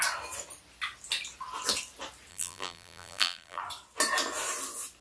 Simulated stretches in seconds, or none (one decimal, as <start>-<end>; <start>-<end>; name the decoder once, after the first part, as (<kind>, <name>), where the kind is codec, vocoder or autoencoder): 2.3-3.6 (vocoder, BigVGAN v2)

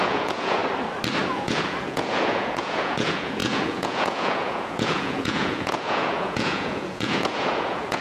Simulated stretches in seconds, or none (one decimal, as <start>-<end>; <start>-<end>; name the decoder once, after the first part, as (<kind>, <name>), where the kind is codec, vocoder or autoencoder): 0.0-0.6 (vocoder, Vocos); 1.3-8.0

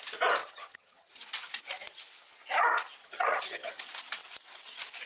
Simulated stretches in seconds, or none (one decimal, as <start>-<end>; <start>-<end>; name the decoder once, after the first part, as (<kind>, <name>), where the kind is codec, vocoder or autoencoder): 0.4-1.1 (vocoder, HiFi-GAN); 3.0-3.7

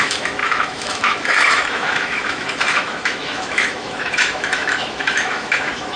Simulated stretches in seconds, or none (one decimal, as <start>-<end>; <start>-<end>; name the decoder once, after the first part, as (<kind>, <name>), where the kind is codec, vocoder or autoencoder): 0.0-6.0 (autoencoder, DAC-VAE)

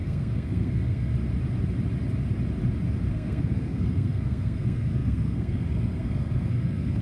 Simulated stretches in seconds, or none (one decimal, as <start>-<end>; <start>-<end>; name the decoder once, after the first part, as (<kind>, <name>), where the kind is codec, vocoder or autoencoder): 0.0-1.1 (codec, SNAC); 3.1-7.0

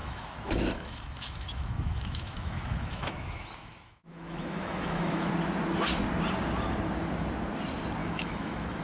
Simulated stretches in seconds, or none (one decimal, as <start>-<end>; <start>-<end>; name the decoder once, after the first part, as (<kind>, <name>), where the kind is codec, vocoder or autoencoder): 0.0-5.3 (autoencoder, DAC-VAE); 8.0-8.8